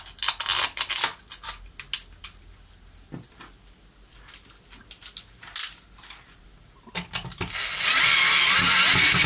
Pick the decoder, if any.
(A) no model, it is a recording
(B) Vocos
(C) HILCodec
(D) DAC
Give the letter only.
A